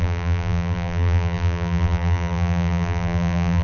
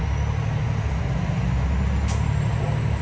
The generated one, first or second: first